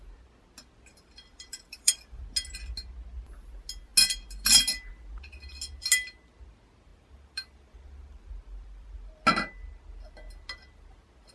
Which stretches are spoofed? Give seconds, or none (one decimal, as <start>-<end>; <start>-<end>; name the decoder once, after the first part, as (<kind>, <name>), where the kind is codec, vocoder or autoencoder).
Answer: 1.3-2.2 (vocoder, BigVGAN v2); 6.9-8.9